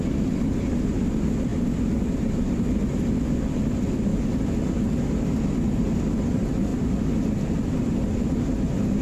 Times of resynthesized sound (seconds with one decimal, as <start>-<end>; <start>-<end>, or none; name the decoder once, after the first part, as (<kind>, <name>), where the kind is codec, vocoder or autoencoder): none